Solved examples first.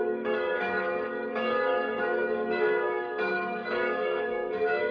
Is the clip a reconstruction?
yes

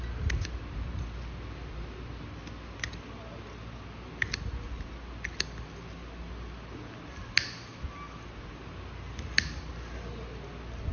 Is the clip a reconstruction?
no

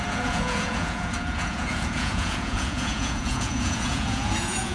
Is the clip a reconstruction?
yes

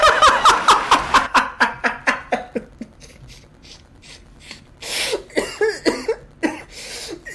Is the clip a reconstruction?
no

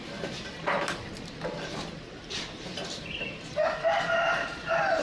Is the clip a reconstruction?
no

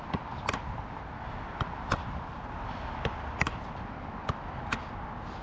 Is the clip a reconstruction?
no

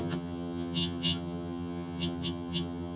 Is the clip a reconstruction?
yes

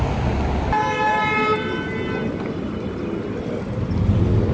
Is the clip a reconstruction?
no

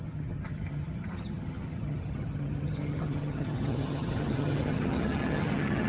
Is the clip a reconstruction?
yes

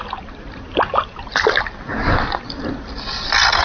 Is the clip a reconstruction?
no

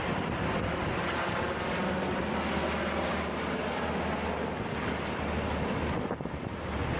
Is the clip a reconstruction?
no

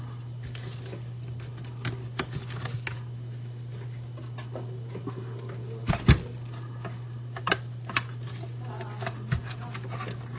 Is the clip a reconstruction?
no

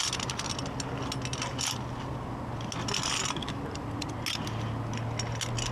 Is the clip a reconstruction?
no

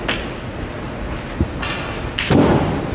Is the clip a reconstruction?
no